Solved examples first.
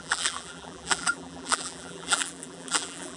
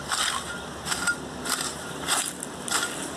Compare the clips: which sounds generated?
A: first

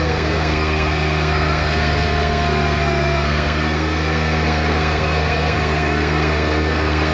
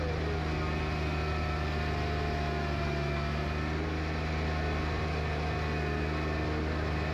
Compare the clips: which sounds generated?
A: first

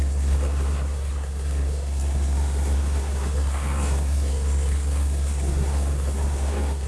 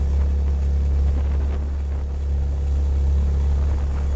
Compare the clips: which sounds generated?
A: first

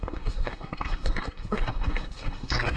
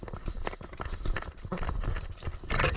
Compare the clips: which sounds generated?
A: first